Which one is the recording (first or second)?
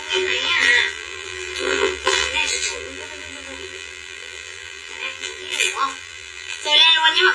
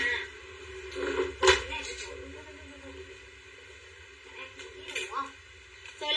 second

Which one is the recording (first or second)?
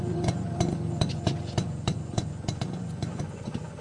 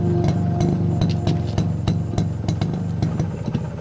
second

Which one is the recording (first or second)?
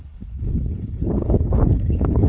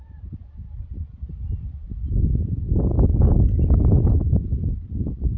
second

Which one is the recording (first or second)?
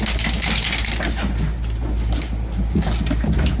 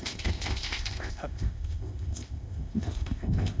first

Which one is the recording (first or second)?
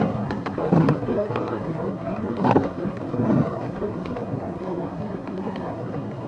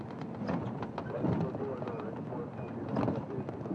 second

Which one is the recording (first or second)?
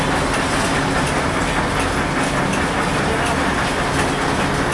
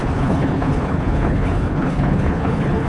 first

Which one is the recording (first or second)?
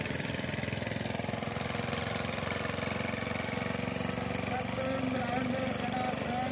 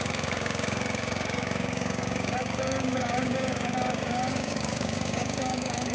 first